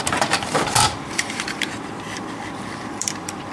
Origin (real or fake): fake